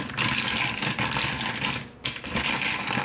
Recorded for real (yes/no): yes